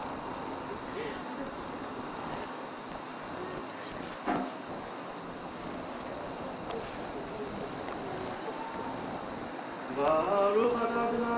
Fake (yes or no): no